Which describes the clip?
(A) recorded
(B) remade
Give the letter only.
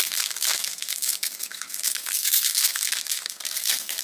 B